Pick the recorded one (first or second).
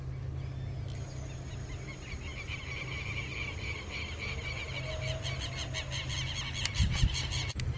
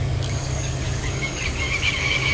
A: first